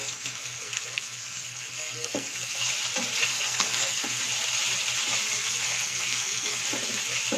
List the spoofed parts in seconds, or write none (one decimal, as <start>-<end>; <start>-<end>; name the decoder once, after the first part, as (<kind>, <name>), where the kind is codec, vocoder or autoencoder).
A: 0.0-2.7 (codec, SNAC); 3.3-4.2; 5.4-6.6